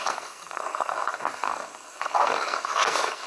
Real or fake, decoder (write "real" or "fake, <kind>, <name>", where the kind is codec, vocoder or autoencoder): fake, codec, SNAC